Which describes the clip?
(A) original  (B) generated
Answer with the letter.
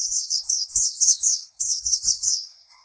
B